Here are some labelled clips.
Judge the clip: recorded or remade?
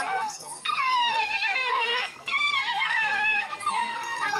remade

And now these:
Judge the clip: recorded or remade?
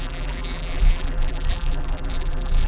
remade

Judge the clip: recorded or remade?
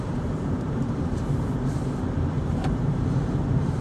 remade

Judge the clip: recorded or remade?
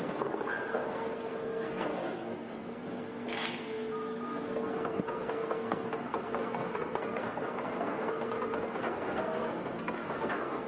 remade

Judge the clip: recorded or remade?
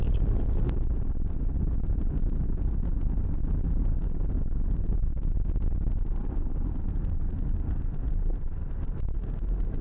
recorded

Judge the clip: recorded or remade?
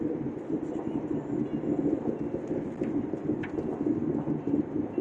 recorded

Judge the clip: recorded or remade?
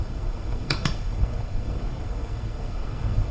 remade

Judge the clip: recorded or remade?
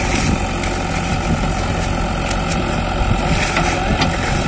recorded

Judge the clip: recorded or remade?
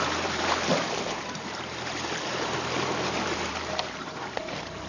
remade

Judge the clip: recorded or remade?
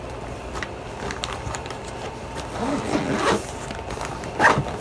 recorded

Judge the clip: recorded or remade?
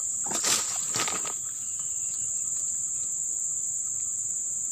recorded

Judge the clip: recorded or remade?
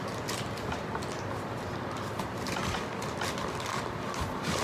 remade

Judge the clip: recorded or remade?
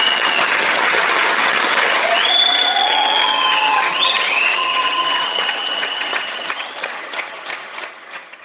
remade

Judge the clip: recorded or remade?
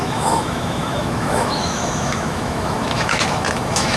remade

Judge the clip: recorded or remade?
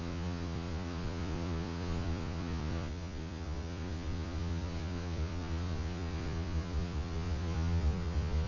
remade